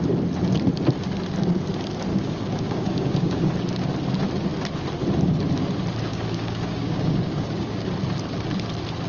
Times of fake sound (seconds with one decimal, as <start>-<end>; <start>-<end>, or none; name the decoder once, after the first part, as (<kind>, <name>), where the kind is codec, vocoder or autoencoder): 2.1-3.5 (codec, DAC); 6.1-7.9